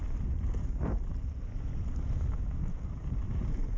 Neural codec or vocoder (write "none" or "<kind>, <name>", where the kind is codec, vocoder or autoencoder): none